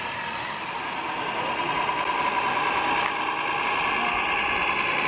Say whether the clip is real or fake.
real